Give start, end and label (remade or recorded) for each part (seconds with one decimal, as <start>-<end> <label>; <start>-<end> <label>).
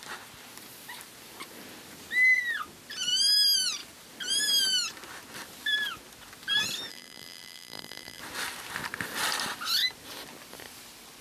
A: 0.0-6.9 recorded; 6.9-8.2 remade; 8.2-11.2 recorded